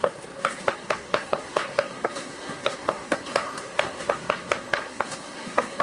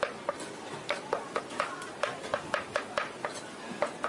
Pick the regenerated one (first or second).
first